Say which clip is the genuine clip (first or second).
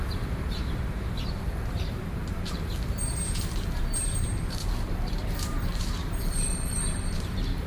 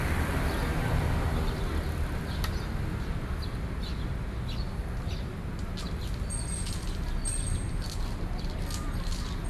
second